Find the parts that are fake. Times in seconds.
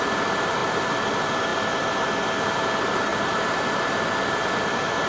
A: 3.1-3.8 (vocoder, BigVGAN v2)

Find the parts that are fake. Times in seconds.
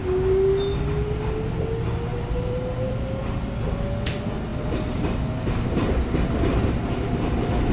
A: 2.1-3.2 (vocoder, BigVGAN v2); 4.5-5.9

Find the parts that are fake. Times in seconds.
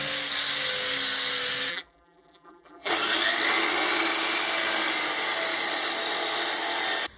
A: 1.7-2.9 (vocoder, BigVGAN v2)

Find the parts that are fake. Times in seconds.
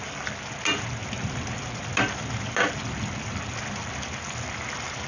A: none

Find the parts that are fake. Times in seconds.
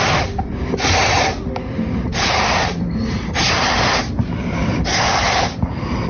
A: 0.0-6.1 (vocoder, BigVGAN v2)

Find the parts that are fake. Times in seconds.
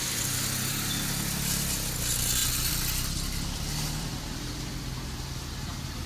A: 2.4-6.1 (vocoder, BigVGAN v2)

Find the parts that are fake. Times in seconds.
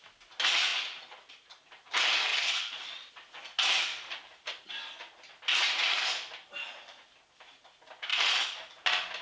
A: 2.3-3.1 (vocoder, BigVGAN v2); 3.9-4.5; 8.1-8.7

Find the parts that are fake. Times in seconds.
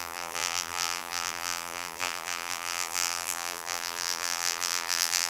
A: 0.0-5.3 (vocoder, BigVGAN v2)